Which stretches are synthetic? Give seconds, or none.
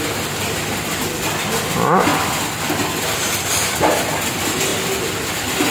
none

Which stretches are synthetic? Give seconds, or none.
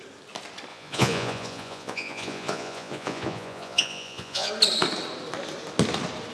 0.7-4.5 (vocoder, Vocos)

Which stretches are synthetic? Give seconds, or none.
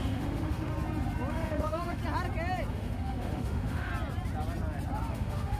0.0-0.7 (autoencoder, DAC-VAE); 1.3-2.0; 2.7-3.9; 5.1-5.6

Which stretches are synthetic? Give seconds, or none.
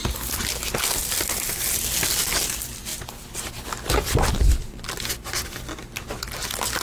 none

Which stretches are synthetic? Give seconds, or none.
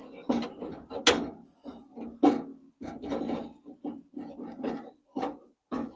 none